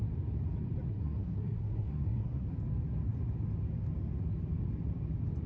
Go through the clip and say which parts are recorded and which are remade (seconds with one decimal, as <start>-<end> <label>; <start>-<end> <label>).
0.0-0.9 recorded; 0.9-2.5 remade; 2.5-5.5 recorded

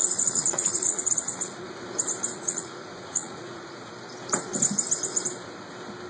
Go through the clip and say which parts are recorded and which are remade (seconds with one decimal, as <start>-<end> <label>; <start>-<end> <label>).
0.0-1.9 remade; 1.9-2.3 recorded; 2.3-3.9 remade; 3.9-6.1 recorded

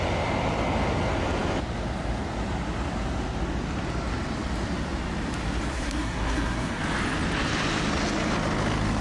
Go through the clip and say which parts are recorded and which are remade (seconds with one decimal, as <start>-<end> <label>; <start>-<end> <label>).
0.0-5.7 recorded; 5.7-6.8 remade; 6.8-9.0 recorded

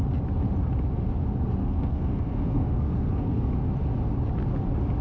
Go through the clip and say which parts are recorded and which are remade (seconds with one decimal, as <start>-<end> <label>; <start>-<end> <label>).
0.0-1.6 recorded; 1.6-3.5 remade; 3.5-5.0 recorded